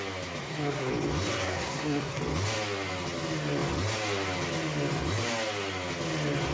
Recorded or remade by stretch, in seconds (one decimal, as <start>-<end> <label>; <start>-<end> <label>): 0.0-0.4 recorded; 0.4-0.9 remade; 0.9-1.3 recorded; 1.3-2.2 remade; 2.2-6.5 recorded